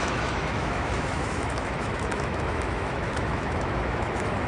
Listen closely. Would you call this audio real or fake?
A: fake